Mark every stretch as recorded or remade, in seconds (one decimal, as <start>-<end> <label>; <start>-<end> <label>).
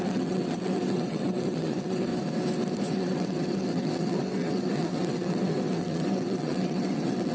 0.0-2.1 remade; 2.1-2.9 recorded; 2.9-7.3 remade